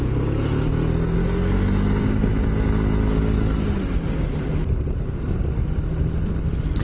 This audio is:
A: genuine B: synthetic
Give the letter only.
A